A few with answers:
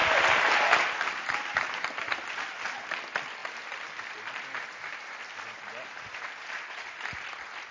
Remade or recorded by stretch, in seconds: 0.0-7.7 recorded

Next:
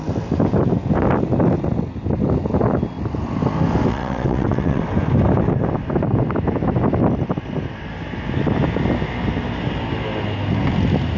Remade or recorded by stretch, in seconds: 0.0-3.9 recorded; 3.9-4.8 remade; 4.8-11.2 recorded

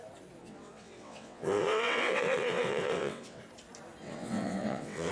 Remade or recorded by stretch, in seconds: 0.0-0.4 recorded; 0.4-3.4 remade; 3.4-4.0 recorded; 4.0-5.1 remade

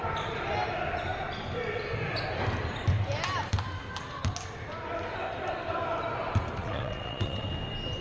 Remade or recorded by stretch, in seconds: 0.0-6.6 recorded; 6.6-7.5 remade; 7.5-8.0 recorded

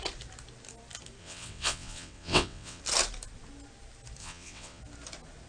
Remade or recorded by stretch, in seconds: 0.0-1.2 recorded; 1.2-2.8 remade; 2.8-4.2 recorded; 4.2-4.8 remade; 4.8-5.5 recorded

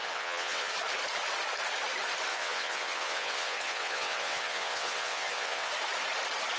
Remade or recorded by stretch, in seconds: 0.0-0.7 remade; 0.7-2.3 recorded; 2.3-5.7 remade; 5.7-6.6 recorded